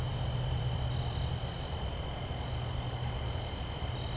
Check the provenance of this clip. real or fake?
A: fake